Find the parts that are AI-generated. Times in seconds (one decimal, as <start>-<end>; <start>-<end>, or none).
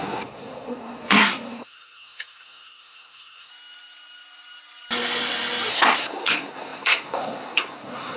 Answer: 0.0-3.5; 5.7-8.2